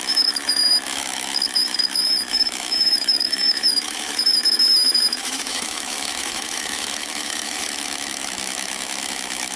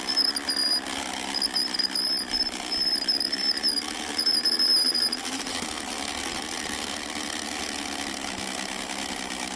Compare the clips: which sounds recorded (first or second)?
second